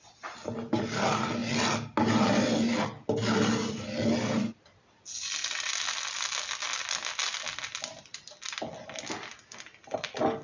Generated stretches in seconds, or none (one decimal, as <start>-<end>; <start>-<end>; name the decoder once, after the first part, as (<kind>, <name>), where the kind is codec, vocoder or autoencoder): none